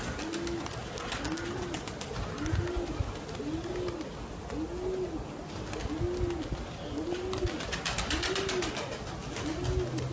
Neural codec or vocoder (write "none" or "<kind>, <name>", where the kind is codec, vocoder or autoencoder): none